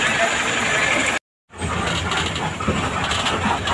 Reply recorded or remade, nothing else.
recorded